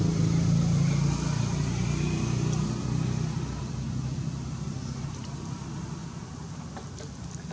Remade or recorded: recorded